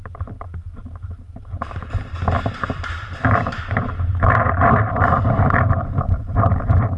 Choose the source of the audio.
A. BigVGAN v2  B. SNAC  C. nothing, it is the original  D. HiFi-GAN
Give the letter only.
A